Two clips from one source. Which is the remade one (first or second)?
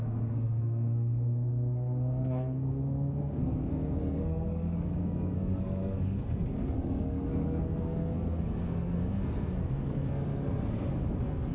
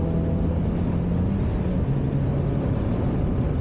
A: first